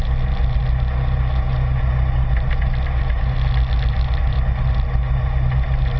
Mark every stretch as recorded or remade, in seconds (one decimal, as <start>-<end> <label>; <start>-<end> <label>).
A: 0.0-6.0 recorded